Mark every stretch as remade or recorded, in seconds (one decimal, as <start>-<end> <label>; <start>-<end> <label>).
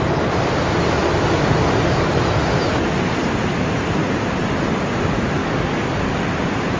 0.0-5.4 recorded; 5.4-6.3 remade; 6.3-6.8 recorded